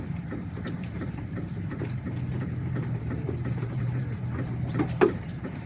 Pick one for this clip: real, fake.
fake